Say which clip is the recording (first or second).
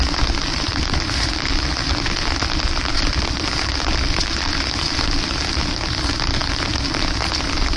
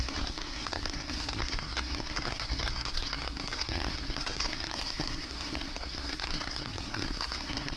first